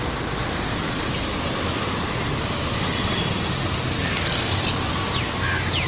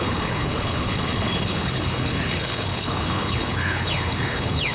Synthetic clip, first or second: second